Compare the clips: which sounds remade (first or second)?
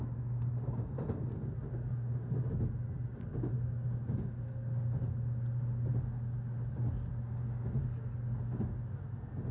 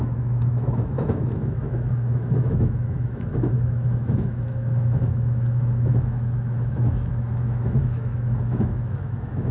second